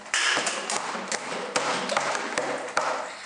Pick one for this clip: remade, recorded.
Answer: recorded